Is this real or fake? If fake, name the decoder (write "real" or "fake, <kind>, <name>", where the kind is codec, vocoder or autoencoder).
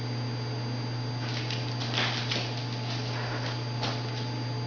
real